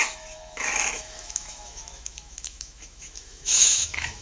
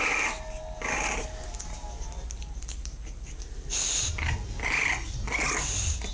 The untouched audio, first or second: second